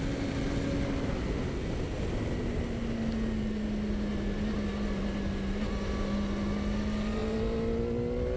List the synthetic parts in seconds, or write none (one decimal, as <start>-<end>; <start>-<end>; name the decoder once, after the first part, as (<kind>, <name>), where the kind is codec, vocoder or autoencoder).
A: none